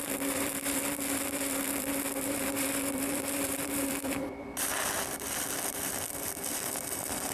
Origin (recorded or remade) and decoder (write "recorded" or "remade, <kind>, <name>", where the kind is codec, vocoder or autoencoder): remade, vocoder, BigVGAN v2